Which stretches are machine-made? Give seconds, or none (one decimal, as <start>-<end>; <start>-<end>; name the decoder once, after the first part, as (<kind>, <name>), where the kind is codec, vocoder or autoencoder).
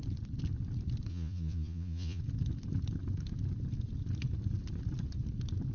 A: 1.1-2.2 (vocoder, Vocos)